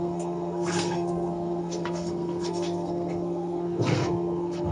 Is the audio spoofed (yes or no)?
yes